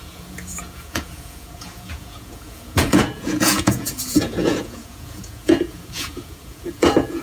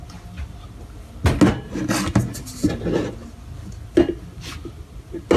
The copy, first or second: first